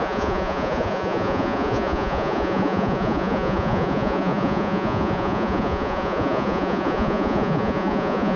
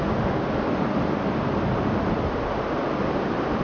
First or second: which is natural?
second